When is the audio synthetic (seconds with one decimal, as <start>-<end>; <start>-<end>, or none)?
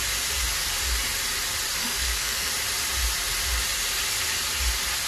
1.8-2.5